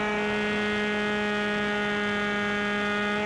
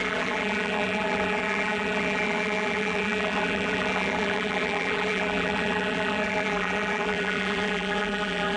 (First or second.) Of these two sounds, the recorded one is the first